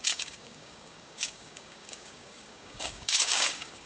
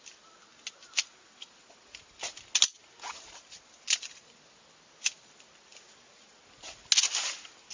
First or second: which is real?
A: second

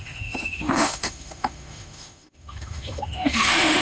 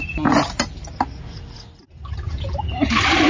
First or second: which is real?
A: second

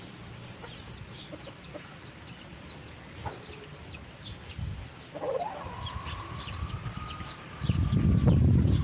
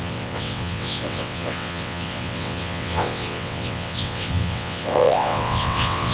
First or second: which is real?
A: first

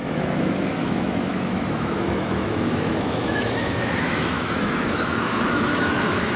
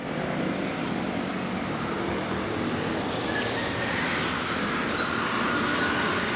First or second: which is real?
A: second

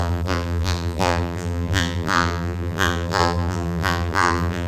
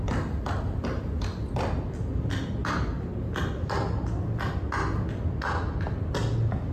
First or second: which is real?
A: second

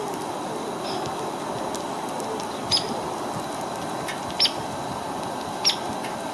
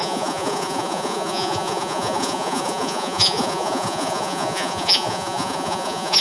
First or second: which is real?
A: first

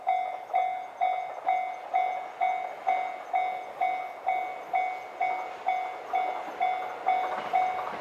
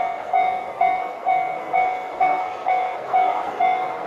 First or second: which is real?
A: first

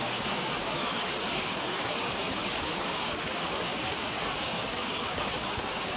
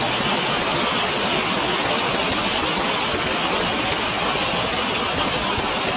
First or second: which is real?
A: second